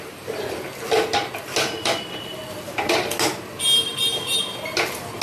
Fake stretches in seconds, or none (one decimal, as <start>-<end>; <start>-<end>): none